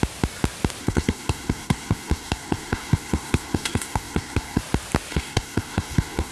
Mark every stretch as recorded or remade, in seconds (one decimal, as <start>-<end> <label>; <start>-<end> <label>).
0.0-0.8 recorded; 0.8-4.6 remade; 4.6-5.1 recorded; 5.1-6.3 remade